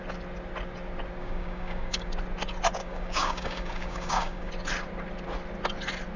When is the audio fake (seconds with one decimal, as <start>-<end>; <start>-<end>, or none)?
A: 1.2-2.1; 2.8-4.5